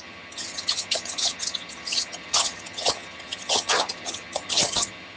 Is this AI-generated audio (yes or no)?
yes